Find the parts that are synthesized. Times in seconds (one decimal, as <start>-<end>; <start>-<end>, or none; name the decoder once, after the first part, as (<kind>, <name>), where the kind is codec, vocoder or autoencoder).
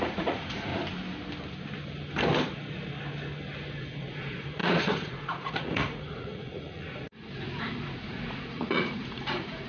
0.0-0.7 (vocoder, Vocos); 3.8-9.7